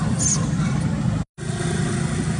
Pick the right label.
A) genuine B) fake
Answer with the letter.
A